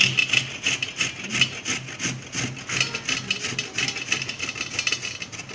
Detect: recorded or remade recorded